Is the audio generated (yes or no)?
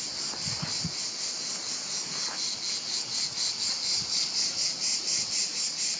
no